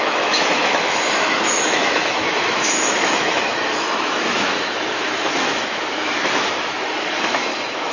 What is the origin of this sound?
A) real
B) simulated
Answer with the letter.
B